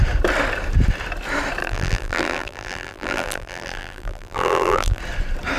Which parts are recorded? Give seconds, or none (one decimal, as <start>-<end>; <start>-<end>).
0.0-1.6; 5.0-5.6